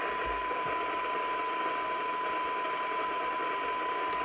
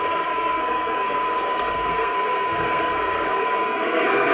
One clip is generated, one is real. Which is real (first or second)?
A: first